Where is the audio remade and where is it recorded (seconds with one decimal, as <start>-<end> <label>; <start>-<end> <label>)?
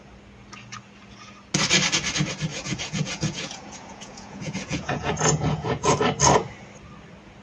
0.0-2.5 recorded; 2.5-6.0 remade; 6.0-7.4 recorded